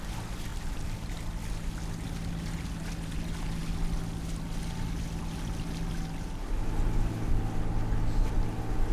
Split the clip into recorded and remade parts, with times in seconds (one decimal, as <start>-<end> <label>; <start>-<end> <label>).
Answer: 0.0-0.5 recorded; 0.5-1.1 remade; 1.1-8.9 recorded